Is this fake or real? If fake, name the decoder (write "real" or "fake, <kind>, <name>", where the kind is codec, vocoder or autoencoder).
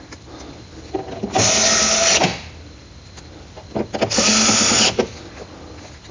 real